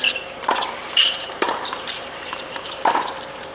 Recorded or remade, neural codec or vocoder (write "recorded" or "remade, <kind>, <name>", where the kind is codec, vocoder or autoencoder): remade, vocoder, BigVGAN v2